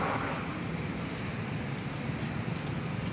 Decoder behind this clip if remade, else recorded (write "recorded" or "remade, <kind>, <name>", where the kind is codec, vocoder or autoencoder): recorded